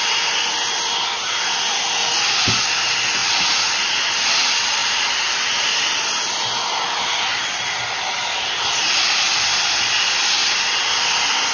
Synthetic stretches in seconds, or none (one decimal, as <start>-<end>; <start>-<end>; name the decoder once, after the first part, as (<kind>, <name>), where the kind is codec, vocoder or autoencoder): none